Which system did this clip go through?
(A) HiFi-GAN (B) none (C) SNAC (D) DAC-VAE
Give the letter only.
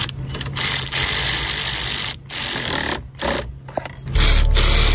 B